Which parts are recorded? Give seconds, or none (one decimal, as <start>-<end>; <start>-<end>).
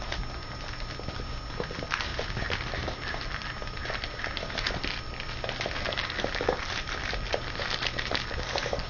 0.0-8.9